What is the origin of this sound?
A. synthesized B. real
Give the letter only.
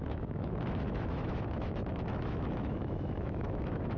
A